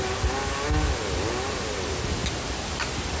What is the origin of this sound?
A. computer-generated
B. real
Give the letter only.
B